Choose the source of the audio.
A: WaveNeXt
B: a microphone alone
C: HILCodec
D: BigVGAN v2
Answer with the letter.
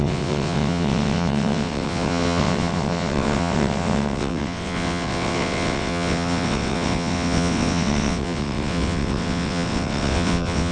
A